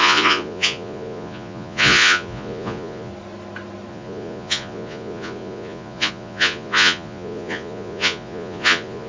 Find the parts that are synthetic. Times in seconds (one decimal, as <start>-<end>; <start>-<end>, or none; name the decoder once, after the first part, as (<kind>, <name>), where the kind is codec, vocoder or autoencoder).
0.0-3.1 (vocoder, Vocos); 3.9-9.1